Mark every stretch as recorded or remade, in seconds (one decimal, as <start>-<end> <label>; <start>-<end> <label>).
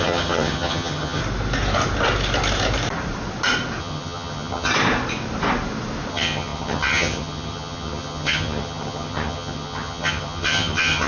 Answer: 0.0-1.2 remade; 1.2-3.8 recorded; 3.8-4.7 remade; 4.7-6.1 recorded; 6.1-11.1 remade